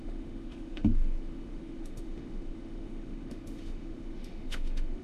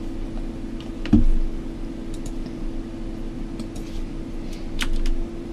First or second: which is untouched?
second